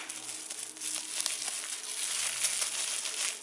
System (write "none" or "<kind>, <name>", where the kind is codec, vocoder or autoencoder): none